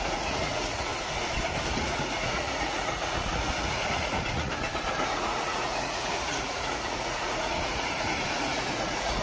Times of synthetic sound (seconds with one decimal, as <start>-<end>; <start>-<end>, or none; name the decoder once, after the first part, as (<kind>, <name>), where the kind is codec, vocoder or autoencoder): 0.0-0.9 (vocoder, Vocos); 1.8-4.5; 5.0-9.2